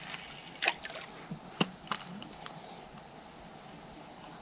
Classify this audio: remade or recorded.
recorded